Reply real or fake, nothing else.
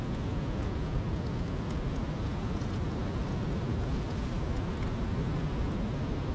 real